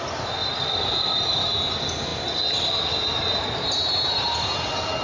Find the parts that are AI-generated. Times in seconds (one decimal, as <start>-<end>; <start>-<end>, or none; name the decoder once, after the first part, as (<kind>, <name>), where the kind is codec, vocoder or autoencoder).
0.4-0.9 (vocoder, BigVGAN v2)